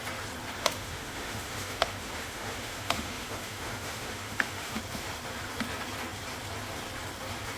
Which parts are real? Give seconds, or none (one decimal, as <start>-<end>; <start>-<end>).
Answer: 0.0-0.6; 4.8-7.6